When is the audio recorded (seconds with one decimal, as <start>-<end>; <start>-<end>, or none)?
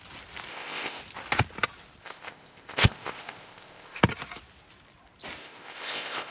0.0-0.5; 1.0-2.0; 4.0-5.4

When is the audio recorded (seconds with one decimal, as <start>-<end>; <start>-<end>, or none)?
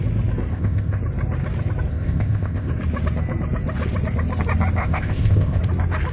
0.0-0.5; 1.0-1.9; 2.7-4.8; 5.6-6.1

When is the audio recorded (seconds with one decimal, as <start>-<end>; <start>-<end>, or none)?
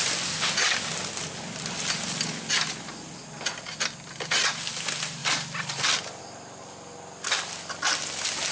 0.0-8.5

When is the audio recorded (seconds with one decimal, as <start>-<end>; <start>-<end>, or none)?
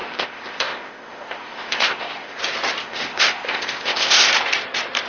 2.4-2.8; 4.3-5.1